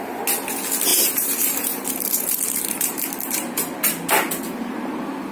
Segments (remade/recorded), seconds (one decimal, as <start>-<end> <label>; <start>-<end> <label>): 0.0-0.9 recorded; 0.9-3.1 remade; 3.1-5.3 recorded